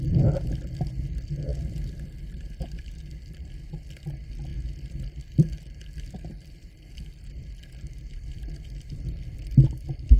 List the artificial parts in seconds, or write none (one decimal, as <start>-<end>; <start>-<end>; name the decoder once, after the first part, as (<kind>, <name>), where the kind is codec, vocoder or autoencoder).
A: 0.0-4.5 (vocoder, BigVGAN v2); 5.2-9.4